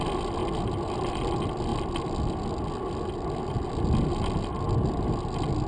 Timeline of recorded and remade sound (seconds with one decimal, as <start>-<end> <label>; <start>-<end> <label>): 0.0-5.7 recorded